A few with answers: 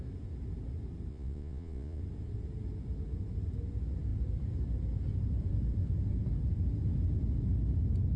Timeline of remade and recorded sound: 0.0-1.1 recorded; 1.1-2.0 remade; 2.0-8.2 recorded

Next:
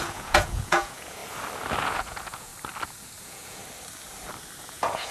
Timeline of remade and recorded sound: 0.0-1.2 remade; 1.2-1.8 recorded; 1.8-2.5 remade; 2.5-3.2 recorded; 3.2-3.6 remade; 3.6-4.6 recorded; 4.6-5.1 remade

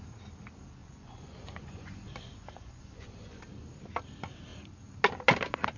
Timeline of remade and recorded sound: 0.0-0.8 recorded; 0.8-3.4 remade; 3.4-5.8 recorded

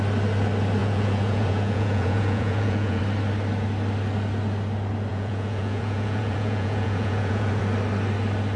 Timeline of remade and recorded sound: 0.0-0.8 recorded; 0.8-3.0 remade; 3.0-5.1 recorded; 5.1-7.6 remade; 7.6-8.6 recorded

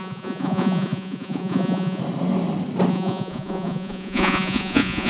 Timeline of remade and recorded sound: 0.0-2.0 remade; 2.0-2.9 recorded; 2.9-5.1 remade